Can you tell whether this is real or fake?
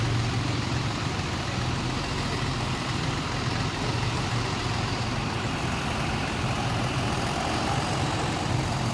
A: fake